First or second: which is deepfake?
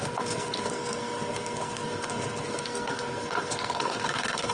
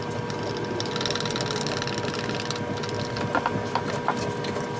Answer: first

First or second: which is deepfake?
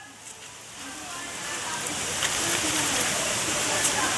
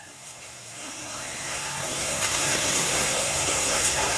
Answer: second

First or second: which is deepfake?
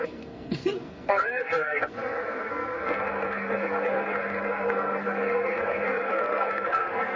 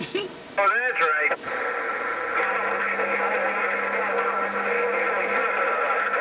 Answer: first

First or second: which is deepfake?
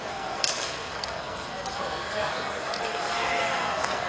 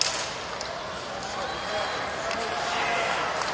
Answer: first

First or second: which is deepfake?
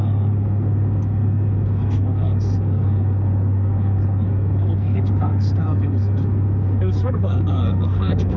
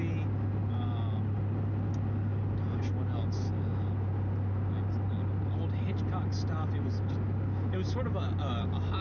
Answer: first